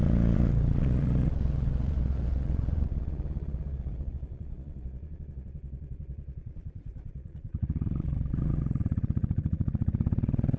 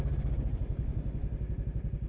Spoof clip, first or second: first